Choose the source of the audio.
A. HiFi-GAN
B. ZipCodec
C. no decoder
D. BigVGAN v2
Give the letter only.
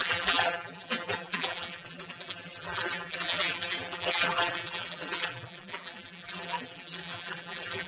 D